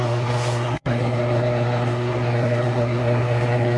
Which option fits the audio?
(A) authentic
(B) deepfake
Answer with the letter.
B